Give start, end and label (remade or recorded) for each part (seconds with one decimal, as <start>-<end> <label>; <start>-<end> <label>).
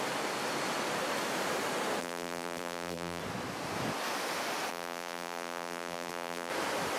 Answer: 0.0-2.0 recorded; 2.0-3.2 remade; 3.2-4.7 recorded; 4.7-6.5 remade; 6.5-7.0 recorded